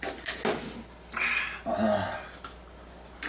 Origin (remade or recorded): recorded